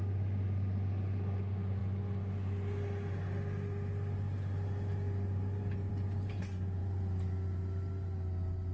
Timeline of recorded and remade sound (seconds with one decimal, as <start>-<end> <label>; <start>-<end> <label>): 0.0-8.7 recorded